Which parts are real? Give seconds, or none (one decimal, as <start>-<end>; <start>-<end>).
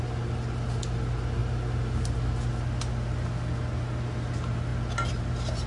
0.0-5.7